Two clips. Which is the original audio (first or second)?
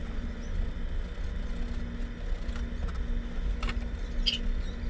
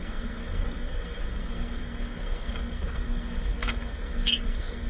first